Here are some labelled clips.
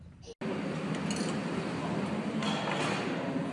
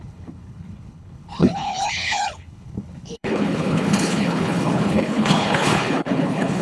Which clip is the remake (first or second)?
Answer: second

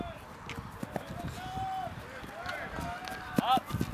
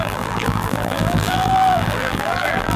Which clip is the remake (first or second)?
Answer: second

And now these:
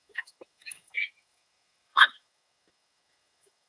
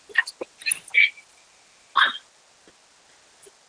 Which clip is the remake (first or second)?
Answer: first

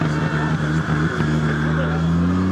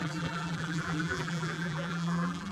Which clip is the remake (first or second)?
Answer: second